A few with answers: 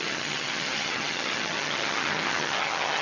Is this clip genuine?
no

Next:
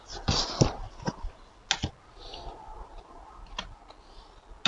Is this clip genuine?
yes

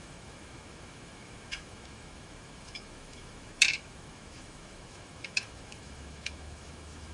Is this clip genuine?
no